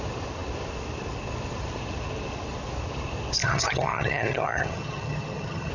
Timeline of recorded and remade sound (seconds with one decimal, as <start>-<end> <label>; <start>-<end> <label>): 0.0-3.4 recorded; 3.4-5.7 remade